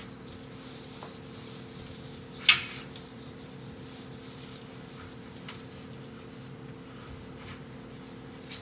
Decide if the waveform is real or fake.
real